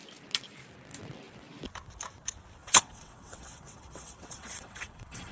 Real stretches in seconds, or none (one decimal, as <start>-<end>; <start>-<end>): 0.0-2.6